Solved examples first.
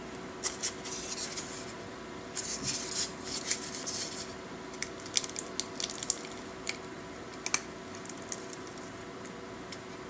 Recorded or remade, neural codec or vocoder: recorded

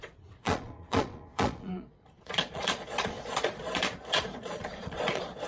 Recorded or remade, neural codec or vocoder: remade, vocoder, Vocos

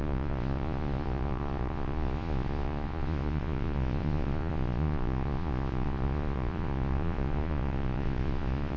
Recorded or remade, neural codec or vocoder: remade, vocoder, Vocos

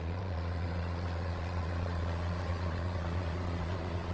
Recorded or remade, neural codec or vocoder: remade, vocoder, Vocos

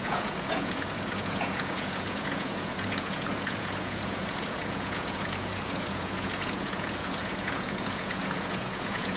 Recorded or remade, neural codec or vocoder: remade, vocoder, Vocos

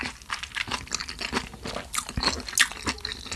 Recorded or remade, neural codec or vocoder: recorded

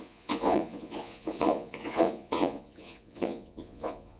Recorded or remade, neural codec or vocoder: remade, vocoder, Vocos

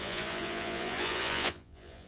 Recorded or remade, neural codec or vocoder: remade, vocoder, Vocos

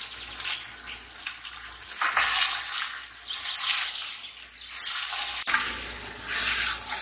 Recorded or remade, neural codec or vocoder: recorded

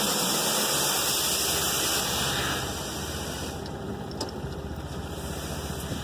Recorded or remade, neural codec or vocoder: recorded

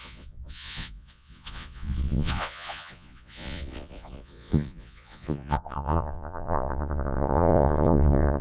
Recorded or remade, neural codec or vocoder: remade, vocoder, Vocos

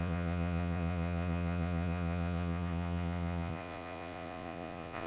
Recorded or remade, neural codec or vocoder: remade, vocoder, Vocos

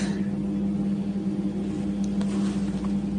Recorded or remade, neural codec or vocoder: recorded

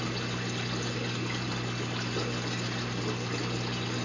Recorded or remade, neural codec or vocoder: recorded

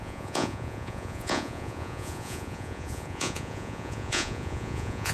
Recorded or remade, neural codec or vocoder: remade, vocoder, Vocos